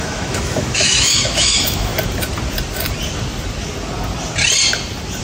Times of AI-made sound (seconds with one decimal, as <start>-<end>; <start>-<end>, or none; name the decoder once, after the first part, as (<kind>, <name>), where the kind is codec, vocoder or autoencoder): 0.0-1.9 (autoencoder, DAC-VAE)